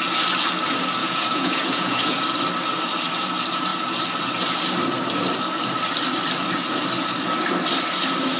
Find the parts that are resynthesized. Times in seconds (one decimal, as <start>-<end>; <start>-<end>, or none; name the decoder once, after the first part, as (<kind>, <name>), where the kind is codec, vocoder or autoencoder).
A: 1.0-2.2 (vocoder, Vocos)